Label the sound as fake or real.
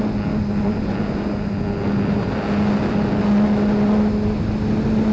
real